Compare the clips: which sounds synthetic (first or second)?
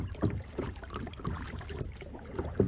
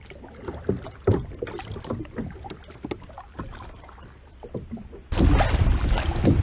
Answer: first